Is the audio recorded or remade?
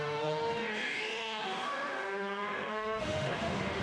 remade